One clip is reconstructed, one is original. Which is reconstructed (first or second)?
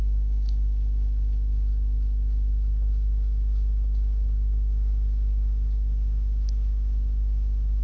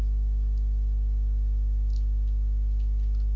first